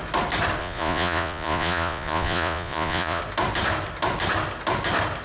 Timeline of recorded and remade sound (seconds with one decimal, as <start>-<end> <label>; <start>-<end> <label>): 0.0-0.6 recorded; 0.6-3.2 remade; 3.2-5.2 recorded